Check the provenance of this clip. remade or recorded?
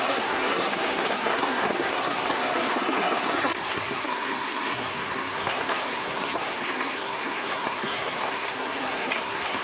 remade